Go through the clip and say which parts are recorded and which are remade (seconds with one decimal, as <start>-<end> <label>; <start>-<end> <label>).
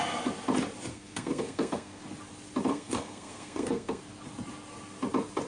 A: 0.0-0.9 recorded; 0.9-2.0 remade; 2.0-2.7 recorded; 2.7-4.0 remade; 4.0-5.5 recorded